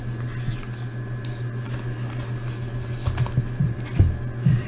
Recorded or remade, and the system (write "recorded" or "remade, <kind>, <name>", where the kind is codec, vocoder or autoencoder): recorded